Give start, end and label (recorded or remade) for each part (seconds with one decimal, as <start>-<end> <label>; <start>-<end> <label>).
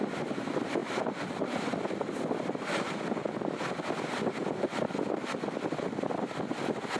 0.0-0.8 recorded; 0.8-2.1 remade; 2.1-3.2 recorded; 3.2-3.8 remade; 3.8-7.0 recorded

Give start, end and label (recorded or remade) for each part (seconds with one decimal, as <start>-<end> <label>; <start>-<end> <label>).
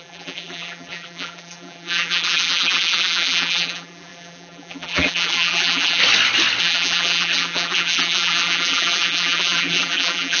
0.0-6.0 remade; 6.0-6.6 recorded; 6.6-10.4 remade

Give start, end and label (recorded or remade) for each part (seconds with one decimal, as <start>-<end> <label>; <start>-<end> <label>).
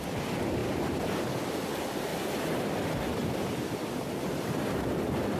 0.0-0.6 recorded; 0.6-1.2 remade; 1.2-3.2 recorded; 3.2-4.6 remade; 4.6-5.4 recorded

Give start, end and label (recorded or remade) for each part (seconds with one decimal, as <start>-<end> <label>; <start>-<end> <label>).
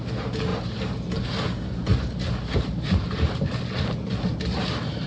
0.0-0.5 recorded; 0.5-3.6 remade; 3.6-4.3 recorded; 4.3-5.1 remade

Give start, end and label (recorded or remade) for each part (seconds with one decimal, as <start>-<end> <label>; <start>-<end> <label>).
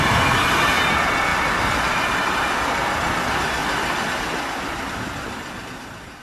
0.0-6.2 recorded